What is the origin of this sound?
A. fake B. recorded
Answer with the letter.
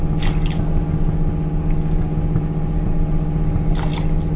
B